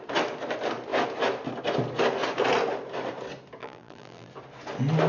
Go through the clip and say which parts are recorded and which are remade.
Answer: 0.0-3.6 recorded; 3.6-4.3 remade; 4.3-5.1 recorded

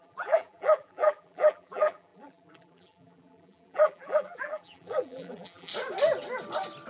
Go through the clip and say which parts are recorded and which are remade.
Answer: 0.0-5.7 remade; 5.7-6.9 recorded

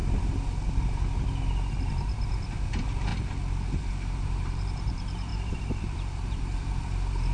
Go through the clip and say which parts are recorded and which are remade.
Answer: 0.0-1.9 recorded; 1.9-3.1 remade; 3.1-3.8 recorded; 3.8-7.3 remade